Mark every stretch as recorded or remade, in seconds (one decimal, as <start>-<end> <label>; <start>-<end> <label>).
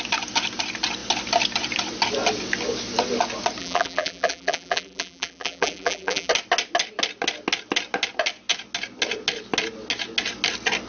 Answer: 0.0-3.6 recorded; 3.6-6.3 remade; 6.3-10.9 recorded